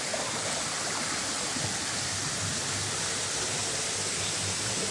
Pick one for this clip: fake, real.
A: real